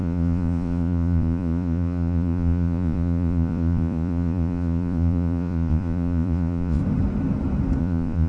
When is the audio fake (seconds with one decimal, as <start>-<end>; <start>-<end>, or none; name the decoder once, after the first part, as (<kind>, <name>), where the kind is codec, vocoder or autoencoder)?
0.0-6.8 (vocoder, Vocos); 7.8-8.3